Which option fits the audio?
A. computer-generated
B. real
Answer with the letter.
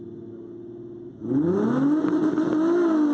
B